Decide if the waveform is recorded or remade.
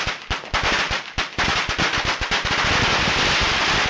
recorded